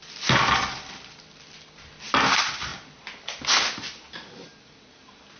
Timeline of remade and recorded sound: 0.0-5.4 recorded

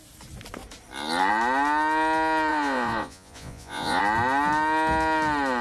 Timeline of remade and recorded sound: 0.0-2.5 recorded; 2.5-4.0 remade; 4.0-5.6 recorded